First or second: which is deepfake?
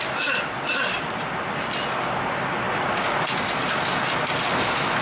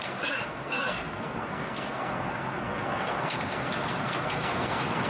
second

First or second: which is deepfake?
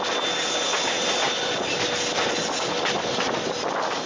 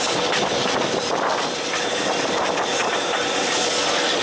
second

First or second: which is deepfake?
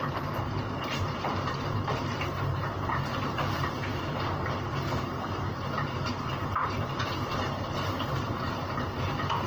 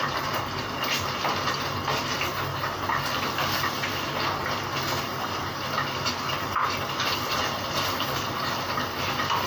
first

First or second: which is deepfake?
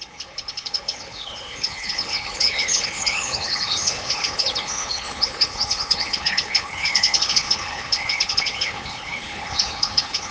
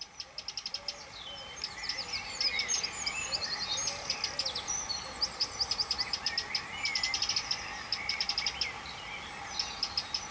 first